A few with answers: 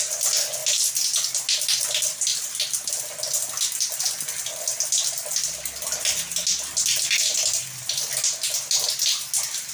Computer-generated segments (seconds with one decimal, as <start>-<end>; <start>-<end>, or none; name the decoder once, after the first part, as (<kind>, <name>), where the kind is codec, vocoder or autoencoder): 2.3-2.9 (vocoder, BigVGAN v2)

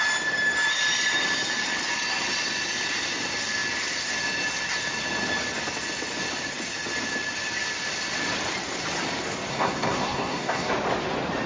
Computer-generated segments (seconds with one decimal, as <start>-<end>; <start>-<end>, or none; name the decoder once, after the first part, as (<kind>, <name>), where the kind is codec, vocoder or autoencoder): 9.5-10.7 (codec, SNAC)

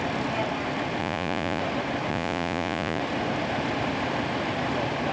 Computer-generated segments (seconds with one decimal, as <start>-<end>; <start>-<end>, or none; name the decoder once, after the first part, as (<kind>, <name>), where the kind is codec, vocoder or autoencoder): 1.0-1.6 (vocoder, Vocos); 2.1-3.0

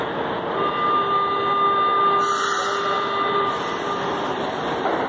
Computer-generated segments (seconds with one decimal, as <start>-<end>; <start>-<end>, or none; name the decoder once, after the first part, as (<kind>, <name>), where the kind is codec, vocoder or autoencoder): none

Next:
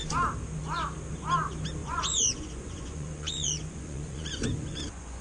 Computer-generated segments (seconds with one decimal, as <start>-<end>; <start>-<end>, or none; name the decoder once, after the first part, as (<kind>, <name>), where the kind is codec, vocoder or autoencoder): 1.8-5.2 (vocoder, Vocos)

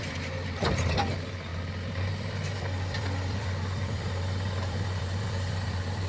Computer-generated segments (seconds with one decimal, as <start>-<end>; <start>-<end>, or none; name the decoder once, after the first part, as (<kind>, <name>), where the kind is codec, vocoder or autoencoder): 0.0-6.1 (vocoder, BigVGAN v2)

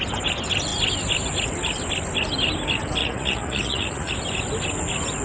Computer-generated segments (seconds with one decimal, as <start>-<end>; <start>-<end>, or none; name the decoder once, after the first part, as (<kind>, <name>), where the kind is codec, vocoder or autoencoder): 3.0-4.1 (vocoder, Vocos)